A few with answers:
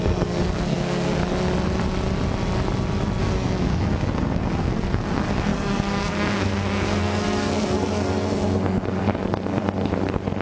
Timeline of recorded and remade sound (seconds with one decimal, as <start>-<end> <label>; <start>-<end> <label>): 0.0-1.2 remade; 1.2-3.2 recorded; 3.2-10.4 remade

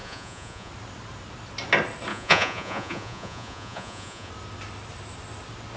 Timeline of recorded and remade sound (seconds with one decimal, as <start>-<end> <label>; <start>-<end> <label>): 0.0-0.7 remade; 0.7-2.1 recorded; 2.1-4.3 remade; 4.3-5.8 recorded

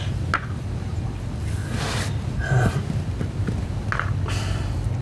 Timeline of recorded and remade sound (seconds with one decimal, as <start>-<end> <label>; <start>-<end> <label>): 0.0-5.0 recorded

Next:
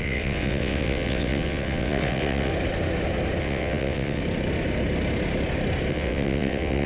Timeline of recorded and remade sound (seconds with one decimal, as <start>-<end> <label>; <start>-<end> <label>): 0.0-2.5 remade; 2.5-3.4 recorded; 3.4-4.2 remade; 4.2-5.9 recorded; 5.9-6.9 remade

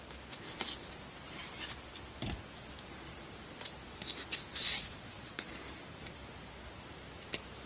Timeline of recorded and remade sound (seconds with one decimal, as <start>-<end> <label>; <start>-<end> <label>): 0.0-4.6 recorded; 4.6-5.5 remade; 5.5-7.7 recorded

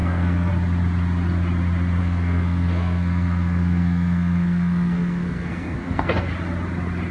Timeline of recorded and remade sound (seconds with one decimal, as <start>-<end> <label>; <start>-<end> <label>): 0.0-0.5 remade; 0.5-2.0 recorded; 2.0-6.3 remade; 6.3-7.1 recorded

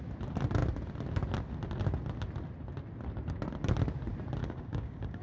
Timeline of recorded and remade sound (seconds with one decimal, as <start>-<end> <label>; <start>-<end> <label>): 0.0-4.4 recorded; 4.4-5.2 remade

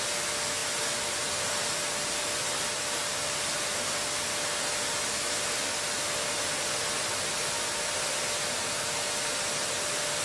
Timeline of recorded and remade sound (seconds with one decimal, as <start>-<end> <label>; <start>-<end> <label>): 0.0-10.2 recorded